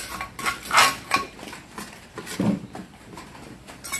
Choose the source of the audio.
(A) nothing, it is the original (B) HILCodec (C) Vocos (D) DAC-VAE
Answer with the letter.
A